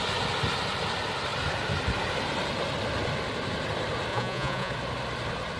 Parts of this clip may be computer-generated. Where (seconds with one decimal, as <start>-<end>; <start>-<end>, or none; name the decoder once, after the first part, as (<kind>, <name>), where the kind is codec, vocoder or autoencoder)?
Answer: 4.1-4.7 (vocoder, Vocos)